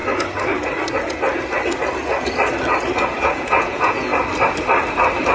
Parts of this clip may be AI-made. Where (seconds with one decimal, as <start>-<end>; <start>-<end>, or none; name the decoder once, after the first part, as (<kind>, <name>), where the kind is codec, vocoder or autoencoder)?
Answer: 3.2-4.1 (vocoder, Vocos)